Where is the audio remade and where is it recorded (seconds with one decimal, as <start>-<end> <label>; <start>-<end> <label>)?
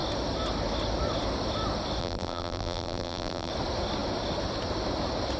0.0-2.0 recorded; 2.0-3.5 remade; 3.5-5.4 recorded